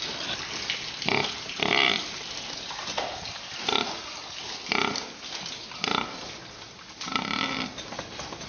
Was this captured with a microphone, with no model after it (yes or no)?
yes